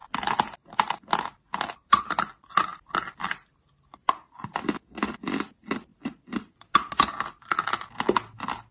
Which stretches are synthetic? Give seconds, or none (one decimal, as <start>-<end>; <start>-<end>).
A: none